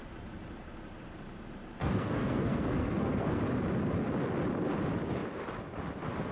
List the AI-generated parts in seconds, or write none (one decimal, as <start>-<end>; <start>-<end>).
1.8-3.4